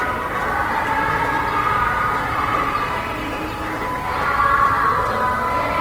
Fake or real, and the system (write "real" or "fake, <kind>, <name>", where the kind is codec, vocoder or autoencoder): real